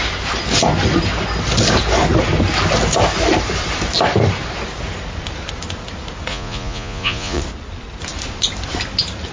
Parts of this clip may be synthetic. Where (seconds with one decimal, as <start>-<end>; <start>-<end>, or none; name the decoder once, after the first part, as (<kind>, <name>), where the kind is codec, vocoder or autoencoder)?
6.3-7.4 (vocoder, Vocos)